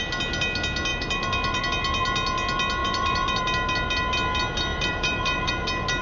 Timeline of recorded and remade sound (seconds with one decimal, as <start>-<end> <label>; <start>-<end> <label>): 0.0-0.9 recorded; 0.9-1.6 remade; 1.6-2.8 recorded; 2.8-3.4 remade; 3.4-4.7 recorded; 4.7-5.5 remade; 5.5-6.0 recorded